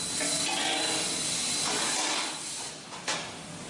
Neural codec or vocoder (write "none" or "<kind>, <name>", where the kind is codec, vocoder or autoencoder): none